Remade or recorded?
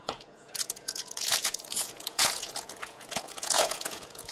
remade